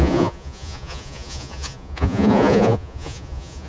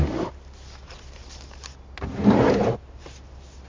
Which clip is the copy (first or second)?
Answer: first